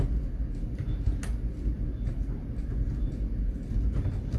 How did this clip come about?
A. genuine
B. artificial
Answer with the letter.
A